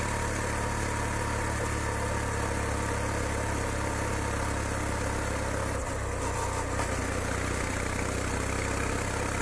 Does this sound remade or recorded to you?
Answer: recorded